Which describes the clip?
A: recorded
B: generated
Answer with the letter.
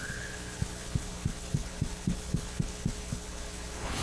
B